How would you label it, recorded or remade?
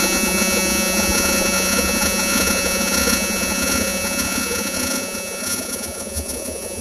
remade